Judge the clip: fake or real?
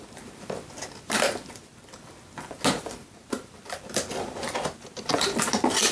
real